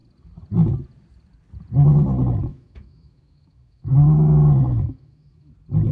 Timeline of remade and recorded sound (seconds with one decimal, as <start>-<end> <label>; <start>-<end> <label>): 0.0-2.5 recorded; 2.5-5.5 remade; 5.5-5.9 recorded